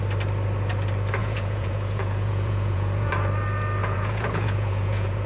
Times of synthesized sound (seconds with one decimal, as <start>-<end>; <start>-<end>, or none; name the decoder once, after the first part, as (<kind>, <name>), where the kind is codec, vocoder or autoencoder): 1.2-3.1 (vocoder, Vocos); 3.8-5.3